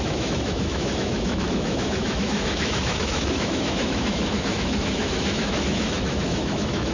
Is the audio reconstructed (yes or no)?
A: yes